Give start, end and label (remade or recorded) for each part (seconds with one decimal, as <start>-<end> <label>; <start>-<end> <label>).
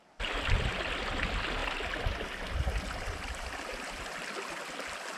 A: 0.0-5.2 recorded